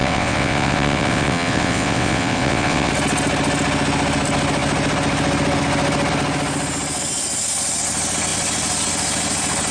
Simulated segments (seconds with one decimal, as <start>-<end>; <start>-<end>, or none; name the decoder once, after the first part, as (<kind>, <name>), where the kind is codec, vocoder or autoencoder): 0.0-2.9 (vocoder, WaveNeXt)